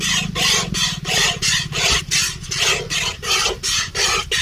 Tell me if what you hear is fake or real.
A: real